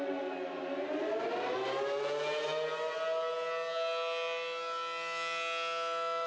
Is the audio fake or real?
real